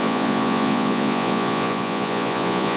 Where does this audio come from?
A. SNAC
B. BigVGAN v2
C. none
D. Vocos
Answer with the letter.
D